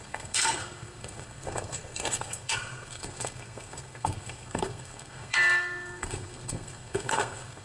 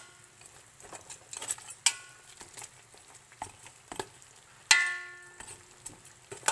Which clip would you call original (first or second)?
second